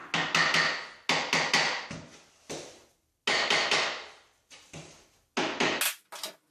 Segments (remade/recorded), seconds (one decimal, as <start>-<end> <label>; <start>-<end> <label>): 0.0-6.5 recorded

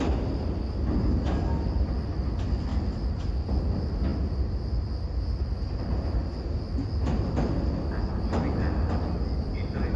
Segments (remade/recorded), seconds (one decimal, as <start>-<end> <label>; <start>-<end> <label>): 0.0-10.0 recorded

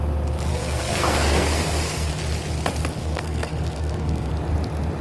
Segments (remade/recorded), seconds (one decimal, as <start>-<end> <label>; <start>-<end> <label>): 0.0-0.5 recorded; 0.5-2.1 remade; 2.1-3.0 recorded; 3.0-4.3 remade; 4.3-5.0 recorded

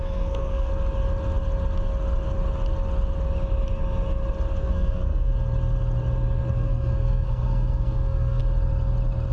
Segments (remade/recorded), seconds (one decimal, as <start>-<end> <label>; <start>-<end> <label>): 0.0-0.7 remade; 0.7-4.6 recorded; 4.6-5.3 remade; 5.3-6.5 recorded; 6.5-8.4 remade; 8.4-9.3 recorded

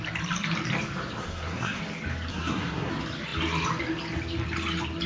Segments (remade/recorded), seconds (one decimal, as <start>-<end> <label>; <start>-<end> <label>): 0.0-1.2 recorded; 1.2-1.8 remade; 1.8-2.3 recorded; 2.3-2.9 remade; 2.9-5.1 recorded

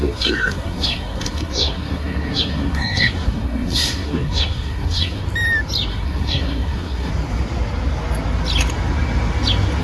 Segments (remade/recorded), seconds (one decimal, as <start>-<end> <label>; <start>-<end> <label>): 0.0-5.2 remade; 5.2-5.9 recorded; 5.9-7.1 remade; 7.1-9.8 recorded